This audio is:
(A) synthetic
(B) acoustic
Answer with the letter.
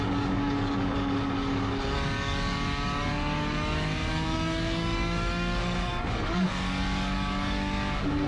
A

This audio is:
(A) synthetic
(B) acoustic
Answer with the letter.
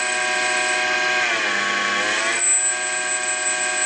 B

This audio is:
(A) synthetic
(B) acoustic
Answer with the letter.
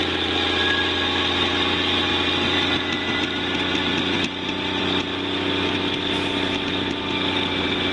B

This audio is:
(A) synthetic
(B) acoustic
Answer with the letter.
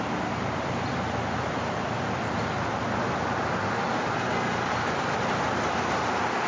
B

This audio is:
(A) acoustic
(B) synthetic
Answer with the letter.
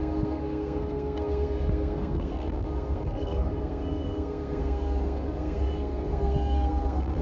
B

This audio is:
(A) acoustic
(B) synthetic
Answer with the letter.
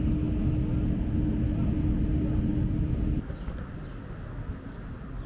A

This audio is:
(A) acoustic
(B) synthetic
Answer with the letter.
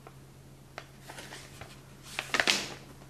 A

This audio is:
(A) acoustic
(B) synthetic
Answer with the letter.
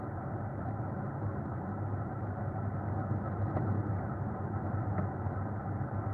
A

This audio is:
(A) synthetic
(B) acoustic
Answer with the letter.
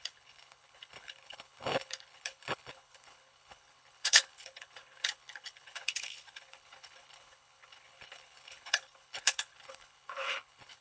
A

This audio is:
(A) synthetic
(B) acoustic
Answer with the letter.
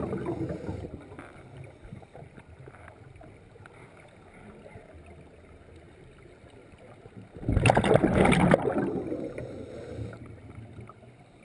B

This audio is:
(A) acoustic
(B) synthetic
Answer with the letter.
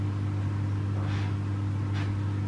A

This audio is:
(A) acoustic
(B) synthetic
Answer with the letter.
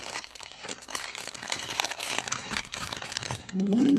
B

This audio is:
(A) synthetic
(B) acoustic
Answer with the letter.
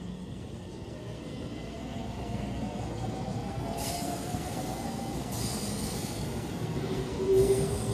A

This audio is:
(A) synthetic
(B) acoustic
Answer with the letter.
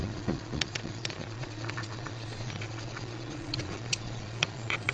A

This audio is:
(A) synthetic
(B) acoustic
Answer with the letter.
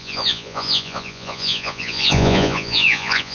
A